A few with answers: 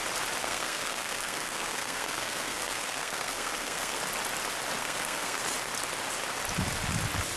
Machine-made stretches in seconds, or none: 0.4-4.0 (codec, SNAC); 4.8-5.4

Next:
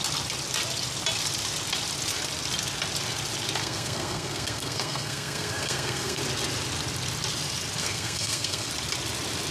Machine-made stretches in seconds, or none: 3.6-6.2 (codec, SNAC); 7.8-8.7

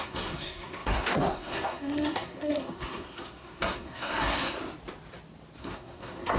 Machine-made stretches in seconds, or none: 0.0-4.6 (codec, SNAC); 5.6-6.4

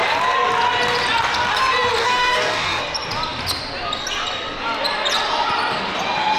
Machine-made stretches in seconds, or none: 2.0-2.8 (codec, DAC)

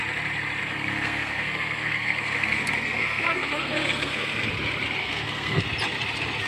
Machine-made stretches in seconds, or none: 0.6-4.5 (codec, SNAC); 5.0-5.6

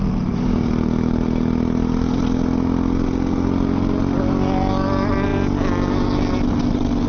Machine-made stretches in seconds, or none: none